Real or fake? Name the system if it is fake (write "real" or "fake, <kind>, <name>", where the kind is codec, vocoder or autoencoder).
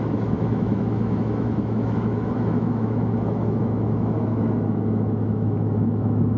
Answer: fake, autoencoder, DAC-VAE